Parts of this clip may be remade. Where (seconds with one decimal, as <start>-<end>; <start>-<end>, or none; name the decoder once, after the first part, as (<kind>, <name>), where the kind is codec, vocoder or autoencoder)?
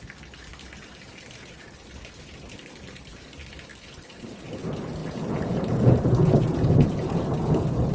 5.0-7.9 (vocoder, Vocos)